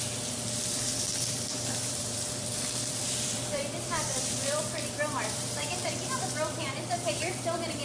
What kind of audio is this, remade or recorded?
remade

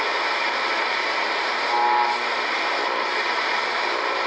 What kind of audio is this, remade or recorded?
remade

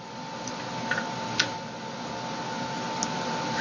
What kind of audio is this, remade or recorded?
recorded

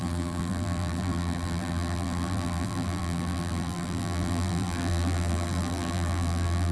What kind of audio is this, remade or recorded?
remade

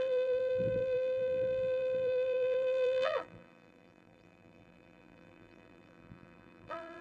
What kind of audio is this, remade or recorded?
remade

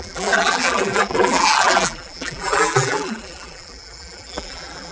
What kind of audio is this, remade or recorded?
remade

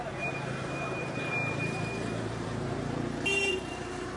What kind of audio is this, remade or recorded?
remade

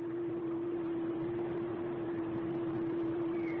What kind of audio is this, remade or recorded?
remade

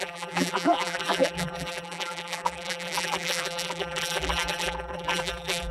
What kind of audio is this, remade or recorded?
remade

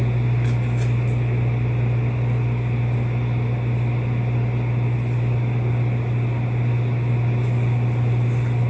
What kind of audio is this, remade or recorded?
recorded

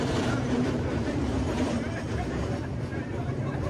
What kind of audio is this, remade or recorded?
remade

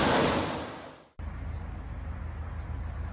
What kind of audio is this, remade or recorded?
recorded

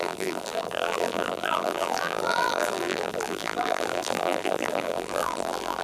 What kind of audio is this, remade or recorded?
remade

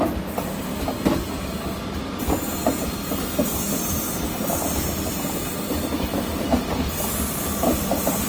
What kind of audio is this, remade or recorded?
recorded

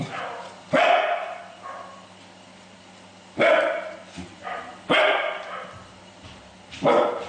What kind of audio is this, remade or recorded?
remade